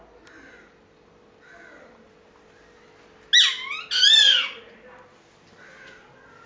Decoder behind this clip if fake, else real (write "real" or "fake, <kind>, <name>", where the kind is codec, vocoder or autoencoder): real